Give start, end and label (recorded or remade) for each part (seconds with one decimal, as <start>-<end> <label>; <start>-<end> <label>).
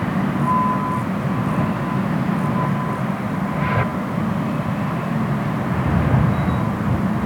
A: 0.0-7.3 recorded